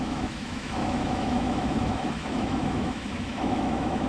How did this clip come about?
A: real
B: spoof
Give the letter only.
B